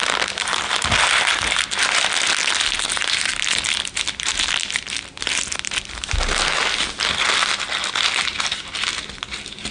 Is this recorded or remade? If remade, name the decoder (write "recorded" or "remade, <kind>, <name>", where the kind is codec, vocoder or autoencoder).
recorded